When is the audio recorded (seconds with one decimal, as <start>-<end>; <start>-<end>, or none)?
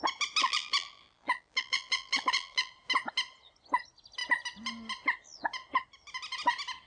0.0-0.4; 2.7-6.9